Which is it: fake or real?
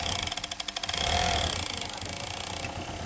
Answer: real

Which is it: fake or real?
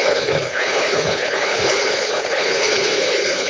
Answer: fake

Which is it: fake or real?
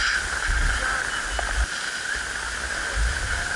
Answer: real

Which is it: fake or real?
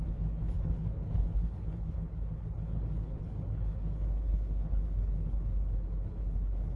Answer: fake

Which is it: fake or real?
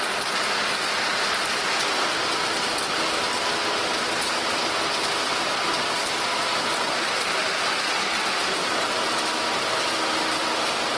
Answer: real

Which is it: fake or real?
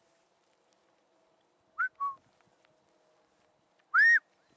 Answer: real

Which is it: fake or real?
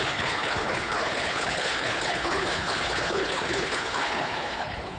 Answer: fake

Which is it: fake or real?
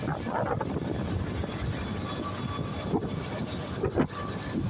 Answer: real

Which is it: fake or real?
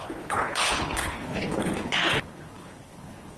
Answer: fake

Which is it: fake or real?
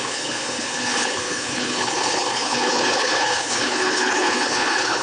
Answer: fake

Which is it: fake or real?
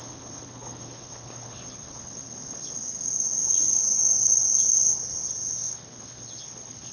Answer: fake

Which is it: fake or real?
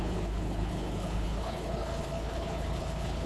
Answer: fake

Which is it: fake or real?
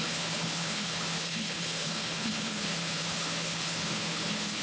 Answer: fake